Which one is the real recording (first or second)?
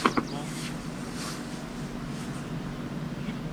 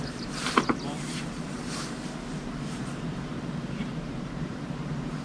first